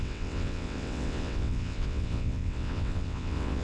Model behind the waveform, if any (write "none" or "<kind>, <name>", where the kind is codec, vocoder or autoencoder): vocoder, WaveNeXt